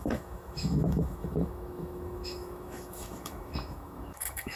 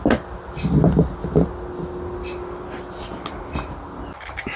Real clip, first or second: second